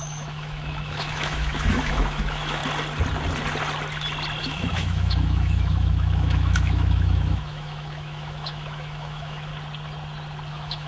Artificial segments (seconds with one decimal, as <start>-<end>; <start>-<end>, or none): 0.0-2.6; 4.4-9.5; 10.5-10.9